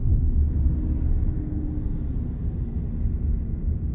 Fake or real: real